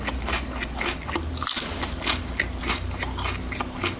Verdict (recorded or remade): recorded